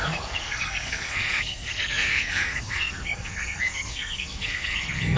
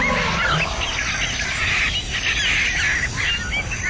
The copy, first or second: first